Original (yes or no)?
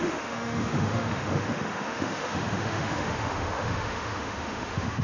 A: no